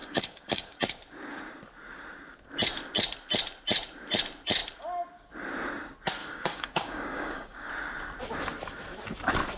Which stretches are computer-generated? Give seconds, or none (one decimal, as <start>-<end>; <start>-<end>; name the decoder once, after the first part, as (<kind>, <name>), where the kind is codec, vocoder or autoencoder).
0.0-0.8 (codec, DAC); 6.2-7.7